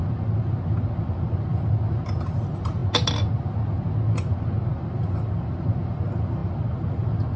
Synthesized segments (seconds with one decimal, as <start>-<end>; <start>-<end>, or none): none